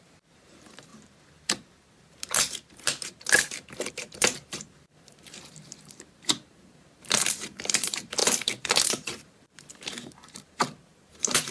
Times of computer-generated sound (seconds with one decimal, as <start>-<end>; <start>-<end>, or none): 0.0-11.5